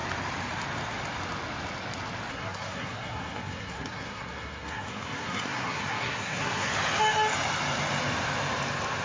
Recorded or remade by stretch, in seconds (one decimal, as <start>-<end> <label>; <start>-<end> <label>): 0.0-2.3 recorded; 2.3-6.7 remade; 6.7-9.0 recorded